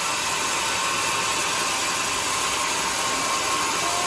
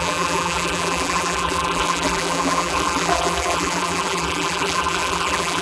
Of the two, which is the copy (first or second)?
second